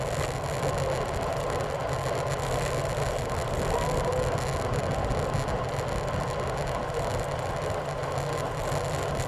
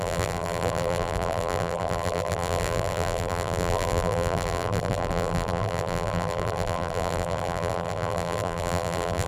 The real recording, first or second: first